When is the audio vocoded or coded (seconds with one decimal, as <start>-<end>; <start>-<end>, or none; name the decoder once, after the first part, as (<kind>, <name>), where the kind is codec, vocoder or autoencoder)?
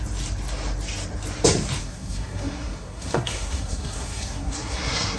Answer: 1.8-5.2 (codec, SNAC)